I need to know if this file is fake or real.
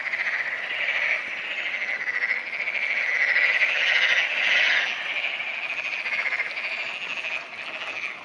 real